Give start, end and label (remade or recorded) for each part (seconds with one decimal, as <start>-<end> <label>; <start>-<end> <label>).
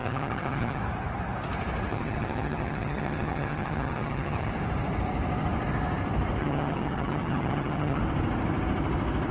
0.0-0.8 remade; 0.8-1.9 recorded; 1.9-4.5 remade; 4.5-6.4 recorded; 6.4-8.0 remade; 8.0-9.3 recorded